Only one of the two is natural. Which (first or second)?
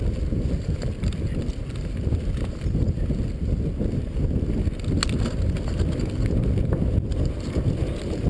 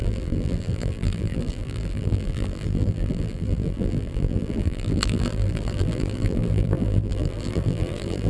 first